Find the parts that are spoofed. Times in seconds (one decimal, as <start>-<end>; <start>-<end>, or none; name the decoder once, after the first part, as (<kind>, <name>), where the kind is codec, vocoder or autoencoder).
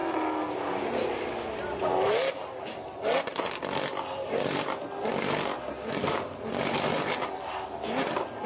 none